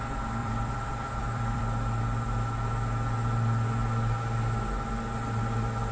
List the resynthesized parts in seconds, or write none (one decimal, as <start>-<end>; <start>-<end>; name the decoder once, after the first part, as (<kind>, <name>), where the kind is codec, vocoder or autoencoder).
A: 0.4-1.6 (vocoder, BigVGAN v2)